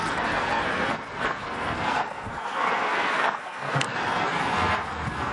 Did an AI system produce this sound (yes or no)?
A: yes